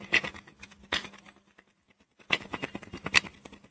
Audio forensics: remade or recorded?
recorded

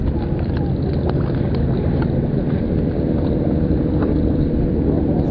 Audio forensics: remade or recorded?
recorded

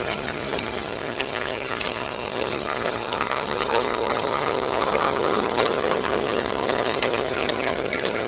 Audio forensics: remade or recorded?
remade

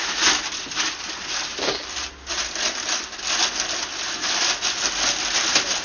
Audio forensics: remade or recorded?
recorded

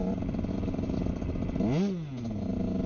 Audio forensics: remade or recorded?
recorded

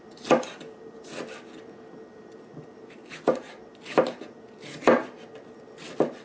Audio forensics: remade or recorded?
recorded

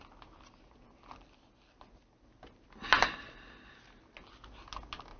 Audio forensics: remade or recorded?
recorded